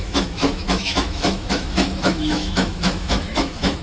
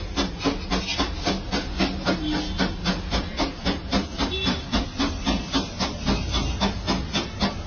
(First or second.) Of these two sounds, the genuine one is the second